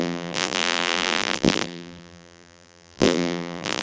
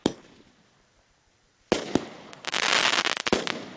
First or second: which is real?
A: second